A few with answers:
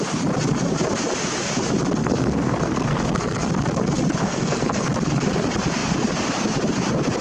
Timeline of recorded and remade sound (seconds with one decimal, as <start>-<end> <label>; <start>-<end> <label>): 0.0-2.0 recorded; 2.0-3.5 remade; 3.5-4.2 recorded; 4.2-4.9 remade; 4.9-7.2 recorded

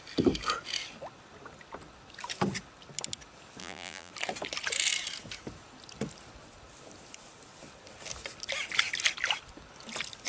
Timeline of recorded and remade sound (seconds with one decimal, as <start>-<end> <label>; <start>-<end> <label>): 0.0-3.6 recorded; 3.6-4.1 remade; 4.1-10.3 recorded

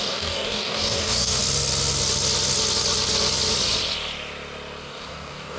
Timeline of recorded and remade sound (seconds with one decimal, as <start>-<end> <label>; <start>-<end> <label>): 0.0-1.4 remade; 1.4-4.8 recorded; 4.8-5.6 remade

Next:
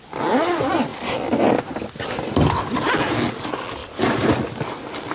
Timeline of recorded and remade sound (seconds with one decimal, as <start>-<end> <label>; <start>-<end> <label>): 0.0-0.9 recorded; 0.9-3.3 remade; 3.3-3.8 recorded; 3.8-4.6 remade; 4.6-5.1 recorded

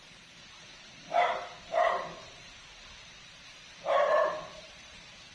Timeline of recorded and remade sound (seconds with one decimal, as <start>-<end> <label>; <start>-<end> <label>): 0.0-5.3 remade

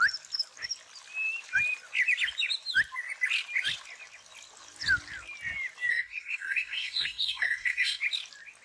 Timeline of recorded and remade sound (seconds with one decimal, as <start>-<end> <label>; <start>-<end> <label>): 0.0-5.9 recorded; 5.9-8.0 remade; 8.0-8.6 recorded

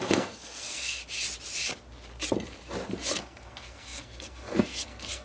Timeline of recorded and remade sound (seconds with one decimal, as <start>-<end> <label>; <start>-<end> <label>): 0.0-1.0 remade; 1.0-3.2 recorded; 3.2-5.2 remade

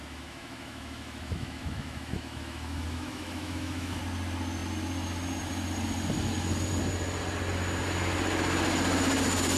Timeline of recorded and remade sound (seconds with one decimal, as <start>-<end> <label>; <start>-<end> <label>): 0.0-4.0 remade; 4.0-9.6 recorded